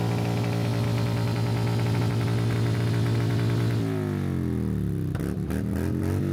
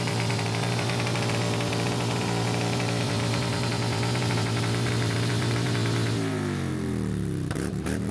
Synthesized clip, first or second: second